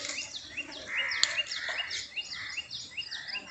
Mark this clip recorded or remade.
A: recorded